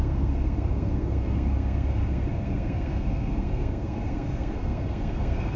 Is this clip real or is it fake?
fake